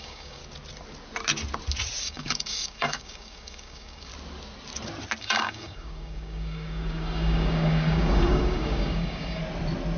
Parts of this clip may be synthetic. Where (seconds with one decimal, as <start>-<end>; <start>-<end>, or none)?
0.0-0.4; 2.0-4.1; 5.2-9.4